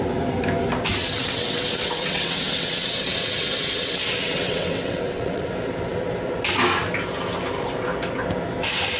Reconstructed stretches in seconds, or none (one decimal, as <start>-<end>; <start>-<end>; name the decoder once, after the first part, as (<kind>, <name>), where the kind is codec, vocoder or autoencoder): 1.0-5.5 (vocoder, WaveNeXt)